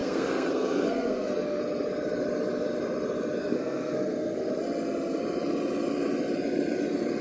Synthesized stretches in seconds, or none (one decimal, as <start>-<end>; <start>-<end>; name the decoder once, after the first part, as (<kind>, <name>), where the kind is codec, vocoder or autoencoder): 0.0-1.6 (codec, SNAC); 3.4-4.5